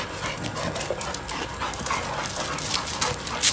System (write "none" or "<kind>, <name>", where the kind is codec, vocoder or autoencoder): none